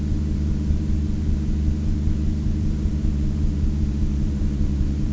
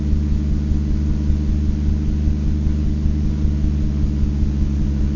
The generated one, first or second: first